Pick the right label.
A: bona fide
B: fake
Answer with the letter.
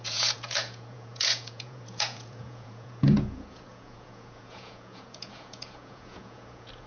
B